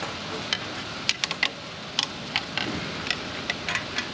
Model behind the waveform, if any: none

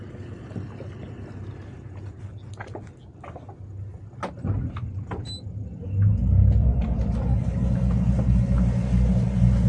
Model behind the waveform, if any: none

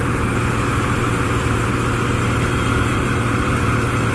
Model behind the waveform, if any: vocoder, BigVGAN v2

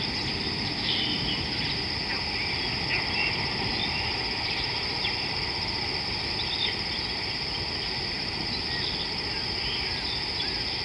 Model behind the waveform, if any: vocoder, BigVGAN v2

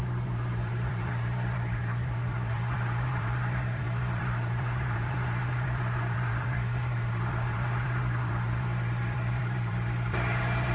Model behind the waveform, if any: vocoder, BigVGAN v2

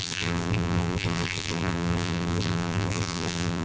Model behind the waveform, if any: vocoder, BigVGAN v2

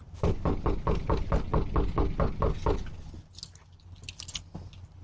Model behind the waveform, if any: none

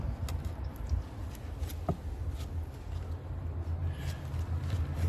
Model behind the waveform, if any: none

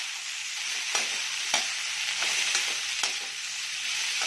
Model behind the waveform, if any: none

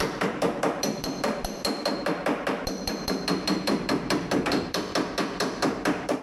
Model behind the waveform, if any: vocoder, BigVGAN v2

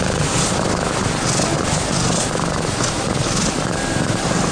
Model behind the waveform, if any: vocoder, BigVGAN v2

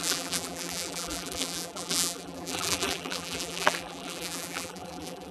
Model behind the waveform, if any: vocoder, BigVGAN v2